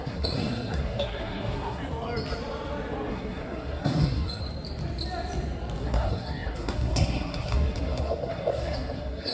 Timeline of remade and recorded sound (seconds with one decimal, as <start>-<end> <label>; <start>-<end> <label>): 0.0-1.8 remade; 1.8-3.1 recorded; 3.1-4.4 remade; 4.4-5.8 recorded; 5.8-9.3 remade